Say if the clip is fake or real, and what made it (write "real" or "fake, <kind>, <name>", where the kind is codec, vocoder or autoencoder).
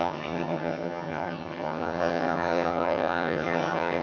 fake, vocoder, HiFi-GAN